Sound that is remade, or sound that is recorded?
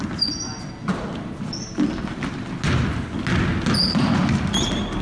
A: recorded